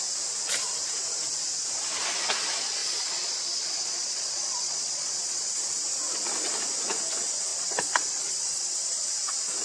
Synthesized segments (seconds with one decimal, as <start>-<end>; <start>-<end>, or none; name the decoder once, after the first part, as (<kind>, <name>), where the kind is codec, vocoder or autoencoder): 2.8-5.5 (vocoder, Vocos); 7.5-9.1